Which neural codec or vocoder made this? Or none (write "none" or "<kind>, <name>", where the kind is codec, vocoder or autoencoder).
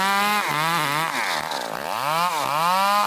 none